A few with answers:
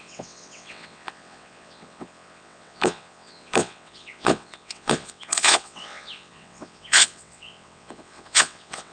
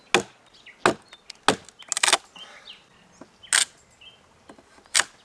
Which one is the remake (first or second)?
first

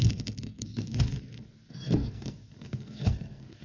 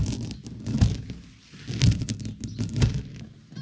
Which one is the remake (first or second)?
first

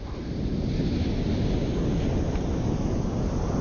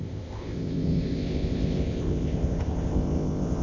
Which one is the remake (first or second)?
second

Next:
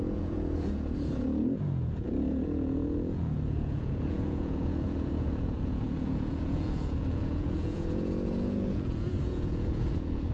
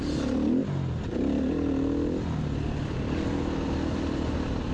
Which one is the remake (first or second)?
first